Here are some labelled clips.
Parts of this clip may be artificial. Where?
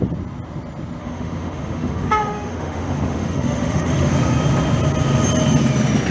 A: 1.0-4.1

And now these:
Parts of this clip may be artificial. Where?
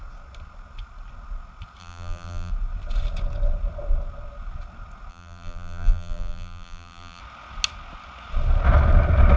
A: 1.8-2.5; 5.1-7.2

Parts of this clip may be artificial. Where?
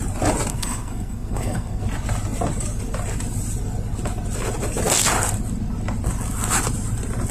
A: 0.5-1.8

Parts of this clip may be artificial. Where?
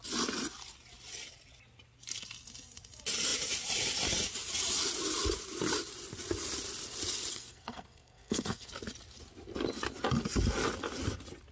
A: 7.3-8.7